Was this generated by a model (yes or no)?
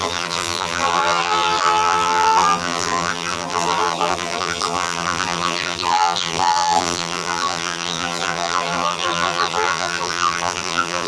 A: yes